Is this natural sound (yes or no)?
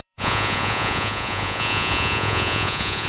no